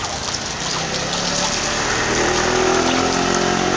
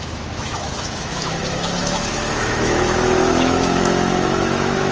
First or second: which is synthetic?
second